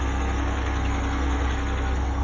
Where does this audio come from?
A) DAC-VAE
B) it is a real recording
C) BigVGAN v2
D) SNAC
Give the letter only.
D